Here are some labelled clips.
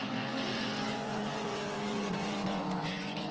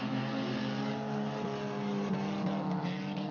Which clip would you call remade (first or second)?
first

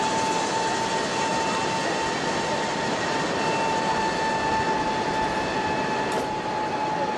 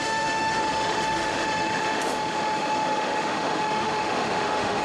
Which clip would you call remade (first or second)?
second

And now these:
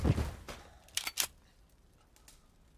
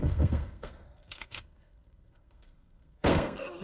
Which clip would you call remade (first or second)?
second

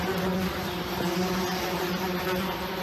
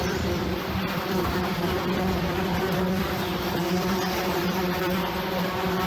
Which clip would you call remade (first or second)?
second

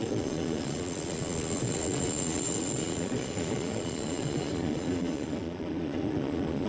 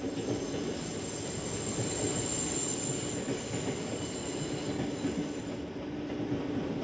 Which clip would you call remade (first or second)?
first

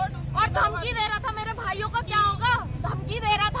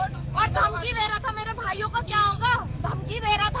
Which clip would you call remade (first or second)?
second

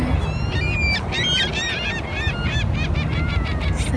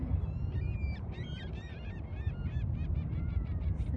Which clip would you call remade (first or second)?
second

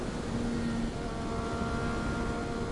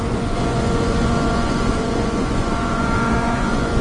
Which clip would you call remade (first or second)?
second